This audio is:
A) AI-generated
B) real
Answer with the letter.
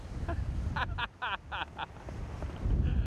B